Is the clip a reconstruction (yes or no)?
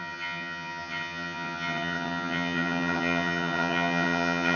yes